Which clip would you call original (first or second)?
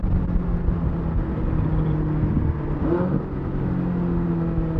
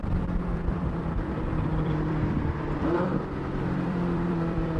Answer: first